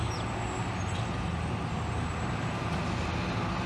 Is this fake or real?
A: real